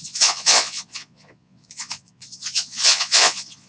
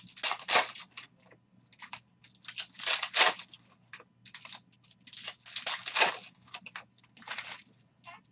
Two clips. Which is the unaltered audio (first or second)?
second